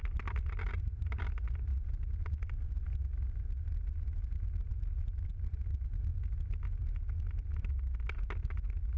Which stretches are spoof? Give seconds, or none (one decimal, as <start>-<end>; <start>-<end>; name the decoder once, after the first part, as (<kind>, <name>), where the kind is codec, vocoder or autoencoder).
none